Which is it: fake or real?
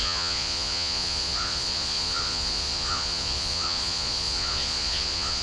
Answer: fake